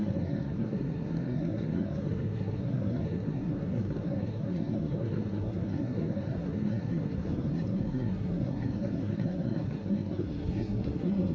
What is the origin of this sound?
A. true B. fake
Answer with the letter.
B